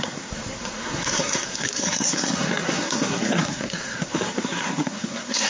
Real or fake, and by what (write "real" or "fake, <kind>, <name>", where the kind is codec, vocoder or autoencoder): fake, codec, SNAC